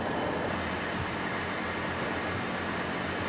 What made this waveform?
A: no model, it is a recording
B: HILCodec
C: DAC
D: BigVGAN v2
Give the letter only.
A